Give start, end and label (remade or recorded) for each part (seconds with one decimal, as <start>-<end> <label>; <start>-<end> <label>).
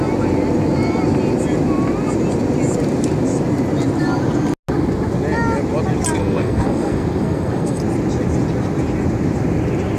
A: 0.0-6.2 recorded; 6.2-7.8 remade; 7.8-10.0 recorded